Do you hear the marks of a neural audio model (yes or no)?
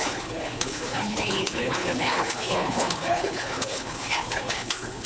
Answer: yes